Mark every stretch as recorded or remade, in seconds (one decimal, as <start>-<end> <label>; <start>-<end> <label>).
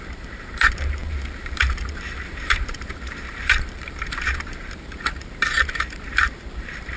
0.0-7.0 remade